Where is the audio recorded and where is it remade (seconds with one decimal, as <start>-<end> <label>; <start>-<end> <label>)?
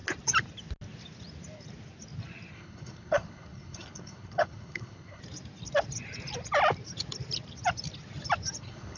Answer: 0.0-2.5 recorded; 2.5-5.2 remade; 5.2-8.6 recorded; 8.6-9.0 remade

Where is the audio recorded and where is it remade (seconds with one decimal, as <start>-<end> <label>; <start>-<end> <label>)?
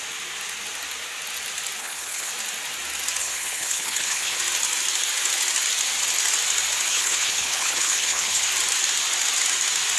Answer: 0.0-1.8 recorded; 1.8-2.3 remade; 2.3-3.2 recorded; 3.2-4.4 remade; 4.4-6.9 recorded; 6.9-8.5 remade; 8.5-10.0 recorded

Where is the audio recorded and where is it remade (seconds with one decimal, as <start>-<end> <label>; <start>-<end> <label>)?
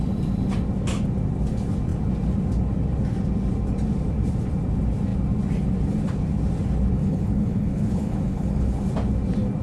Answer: 0.0-7.0 recorded; 7.0-8.8 remade; 8.8-9.6 recorded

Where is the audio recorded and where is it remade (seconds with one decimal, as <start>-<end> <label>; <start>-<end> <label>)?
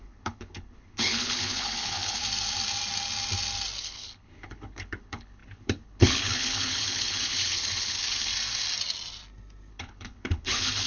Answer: 0.0-2.2 remade; 2.2-3.8 recorded; 3.8-8.3 remade; 8.3-9.7 recorded; 9.7-10.9 remade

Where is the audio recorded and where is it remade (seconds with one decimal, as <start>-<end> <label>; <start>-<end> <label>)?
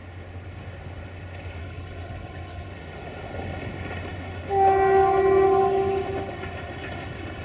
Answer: 0.0-1.6 recorded; 1.6-2.7 remade; 2.7-7.4 recorded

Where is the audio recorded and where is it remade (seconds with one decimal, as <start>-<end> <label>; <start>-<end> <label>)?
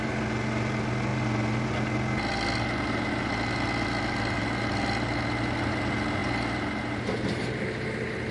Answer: 0.0-8.3 recorded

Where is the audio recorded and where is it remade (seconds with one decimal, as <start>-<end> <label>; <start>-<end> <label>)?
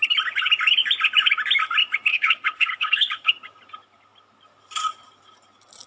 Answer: 0.0-2.1 recorded; 2.1-3.3 remade; 3.3-5.9 recorded